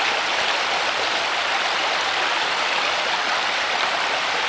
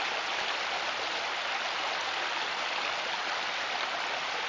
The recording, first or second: second